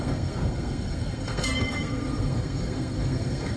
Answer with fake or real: fake